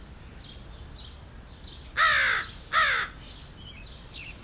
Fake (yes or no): no